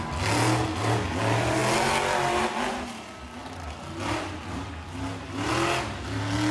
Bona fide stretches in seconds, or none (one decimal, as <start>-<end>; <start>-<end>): 0.0-6.5